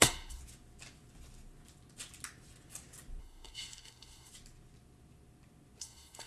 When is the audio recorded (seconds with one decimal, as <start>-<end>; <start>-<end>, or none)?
0.4-3.2; 4.3-5.8